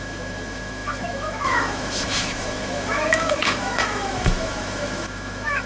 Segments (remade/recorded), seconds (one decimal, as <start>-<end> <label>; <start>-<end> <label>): 0.0-5.7 remade